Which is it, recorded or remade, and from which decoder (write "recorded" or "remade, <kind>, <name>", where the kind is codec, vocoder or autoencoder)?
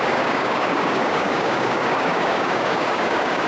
remade, codec, DAC